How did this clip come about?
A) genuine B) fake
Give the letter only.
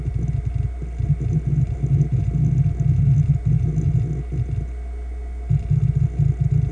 A